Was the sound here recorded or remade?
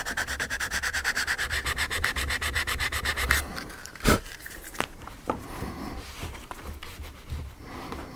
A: remade